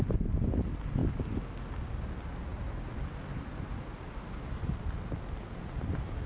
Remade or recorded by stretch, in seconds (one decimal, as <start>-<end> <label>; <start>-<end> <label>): 0.0-2.5 recorded; 2.5-5.3 remade; 5.3-6.3 recorded

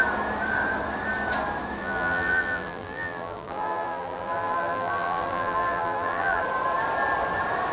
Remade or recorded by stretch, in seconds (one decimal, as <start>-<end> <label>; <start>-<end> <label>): 0.0-1.8 recorded; 1.8-6.4 remade; 6.4-7.7 recorded

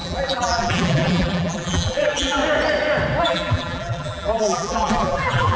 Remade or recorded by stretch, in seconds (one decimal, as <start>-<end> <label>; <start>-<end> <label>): 0.0-2.4 remade; 2.4-3.2 recorded; 3.2-5.6 remade

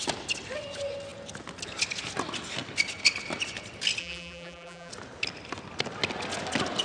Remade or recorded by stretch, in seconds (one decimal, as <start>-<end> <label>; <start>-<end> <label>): 0.0-4.0 recorded; 4.0-4.9 remade; 4.9-6.8 recorded

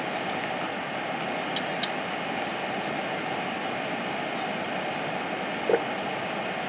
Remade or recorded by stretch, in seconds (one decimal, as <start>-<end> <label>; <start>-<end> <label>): 0.0-6.7 recorded

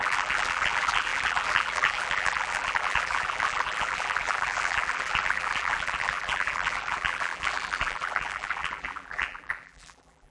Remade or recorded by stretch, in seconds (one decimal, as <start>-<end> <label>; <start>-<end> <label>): 0.0-10.3 remade

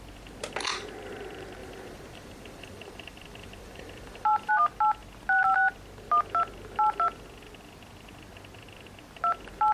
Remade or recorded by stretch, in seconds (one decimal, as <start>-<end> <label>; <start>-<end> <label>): 0.0-1.6 recorded; 1.6-4.5 remade; 4.5-9.7 recorded